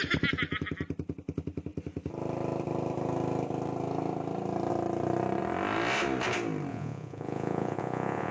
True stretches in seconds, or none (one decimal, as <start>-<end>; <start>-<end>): 0.0-6.7